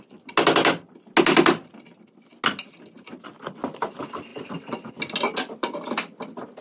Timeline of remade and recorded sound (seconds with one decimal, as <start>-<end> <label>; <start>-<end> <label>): 0.0-6.6 recorded